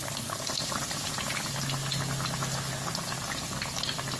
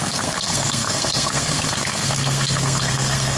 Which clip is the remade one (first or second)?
second